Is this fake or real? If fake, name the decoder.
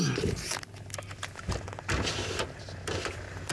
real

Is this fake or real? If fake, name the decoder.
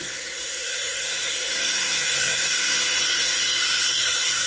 fake, codec, SNAC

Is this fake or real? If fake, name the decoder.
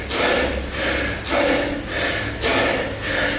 real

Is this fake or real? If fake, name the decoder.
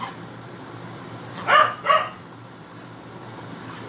real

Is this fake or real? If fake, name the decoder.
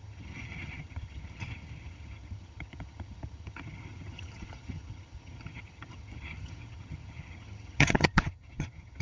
fake, vocoder, HiFi-GAN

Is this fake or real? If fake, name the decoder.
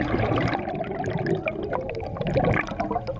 real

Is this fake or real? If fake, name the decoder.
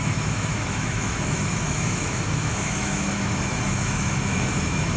fake, autoencoder, DAC-VAE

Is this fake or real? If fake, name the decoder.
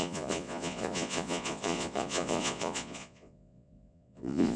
fake, vocoder, Vocos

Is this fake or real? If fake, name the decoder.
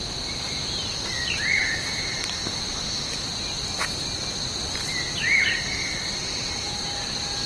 real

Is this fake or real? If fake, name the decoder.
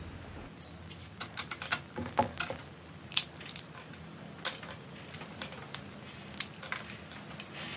real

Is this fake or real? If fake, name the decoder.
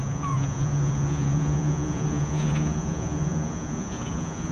fake, vocoder, Vocos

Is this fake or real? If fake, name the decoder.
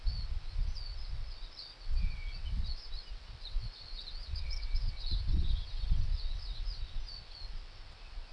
fake, vocoder, WaveNeXt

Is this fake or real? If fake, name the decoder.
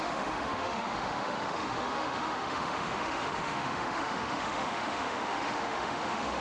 fake, autoencoder, DAC-VAE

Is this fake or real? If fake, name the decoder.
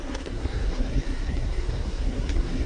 fake, codec, SNAC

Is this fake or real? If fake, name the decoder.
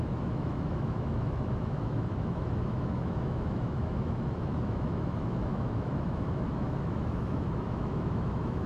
fake, autoencoder, DAC-VAE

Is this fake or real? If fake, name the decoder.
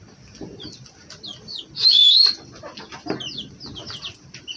real